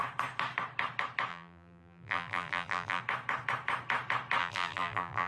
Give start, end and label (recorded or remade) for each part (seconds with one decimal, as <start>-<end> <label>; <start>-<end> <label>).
0.0-1.3 recorded; 1.3-3.0 remade; 3.0-4.4 recorded; 4.4-5.3 remade